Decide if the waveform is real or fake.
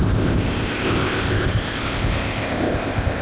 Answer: fake